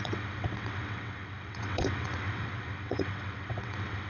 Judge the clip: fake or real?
fake